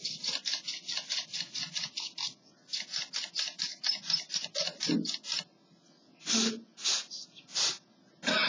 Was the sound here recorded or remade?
recorded